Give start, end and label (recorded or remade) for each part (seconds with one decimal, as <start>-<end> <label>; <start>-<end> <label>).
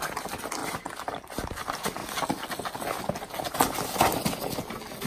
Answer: 0.0-0.6 recorded; 0.6-1.6 remade; 1.6-5.1 recorded